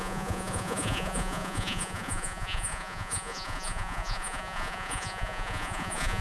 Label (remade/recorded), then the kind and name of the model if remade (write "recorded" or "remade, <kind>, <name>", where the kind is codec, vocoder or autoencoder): remade, vocoder, Vocos